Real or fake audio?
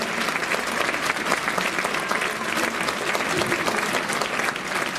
real